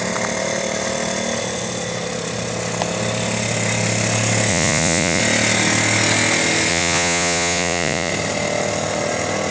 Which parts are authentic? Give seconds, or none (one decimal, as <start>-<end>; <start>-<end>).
0.0-4.5; 5.2-6.7; 8.1-9.5